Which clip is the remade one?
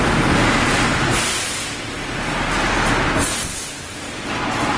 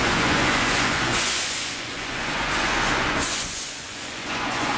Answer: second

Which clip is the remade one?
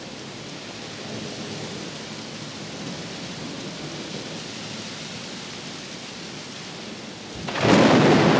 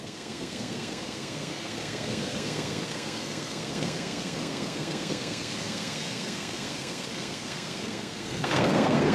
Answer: second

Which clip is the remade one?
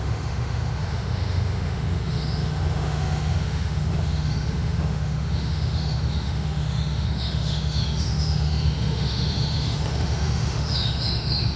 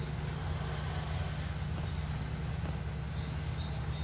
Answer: first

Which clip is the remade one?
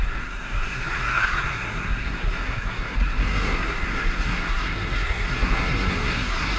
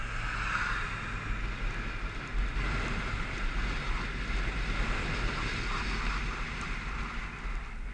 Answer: first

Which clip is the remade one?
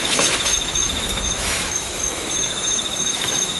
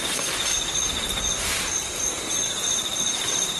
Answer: first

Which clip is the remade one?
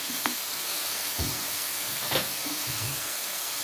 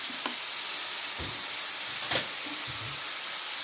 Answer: first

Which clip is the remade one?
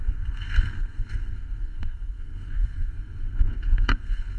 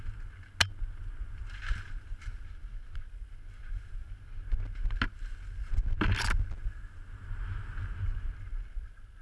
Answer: first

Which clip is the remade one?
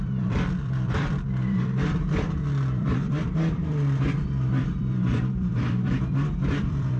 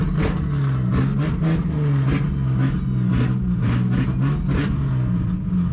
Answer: first